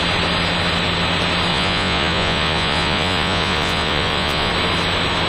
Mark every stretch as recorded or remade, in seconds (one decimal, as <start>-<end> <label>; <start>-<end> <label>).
0.0-1.5 recorded; 1.5-4.5 remade; 4.5-5.3 recorded